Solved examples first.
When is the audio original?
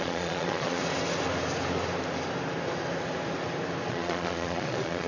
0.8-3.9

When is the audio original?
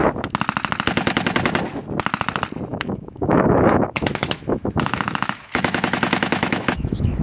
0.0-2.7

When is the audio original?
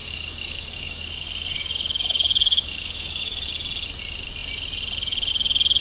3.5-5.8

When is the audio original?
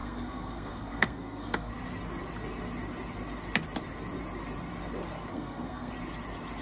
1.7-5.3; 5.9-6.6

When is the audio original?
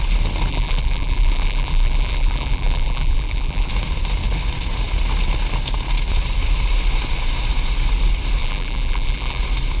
0.0-0.5; 3.7-8.4; 9.4-9.8